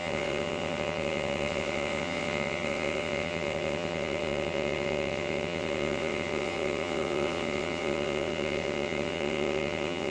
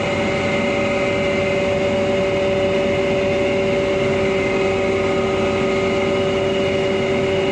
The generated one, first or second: first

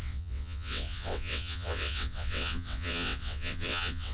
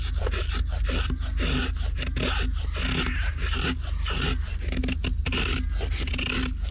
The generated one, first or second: first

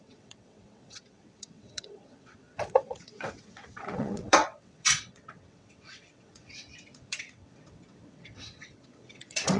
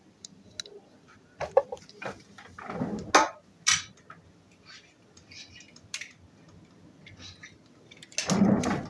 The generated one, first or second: first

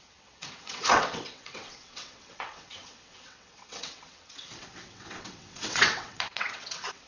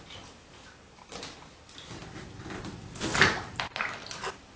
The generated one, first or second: first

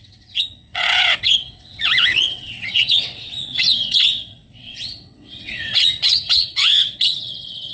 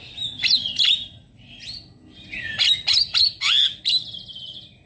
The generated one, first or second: first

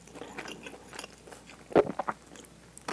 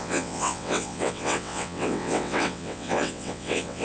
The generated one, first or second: second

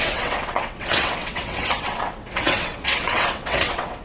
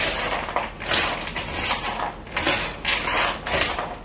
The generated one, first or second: first